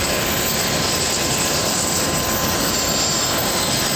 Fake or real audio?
real